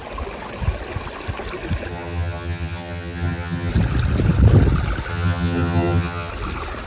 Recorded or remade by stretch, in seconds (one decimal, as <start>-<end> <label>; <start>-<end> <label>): 0.0-1.9 recorded; 1.9-3.7 remade; 3.7-5.1 recorded; 5.1-6.3 remade; 6.3-6.9 recorded